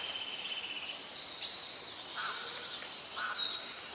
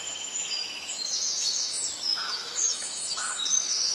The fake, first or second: second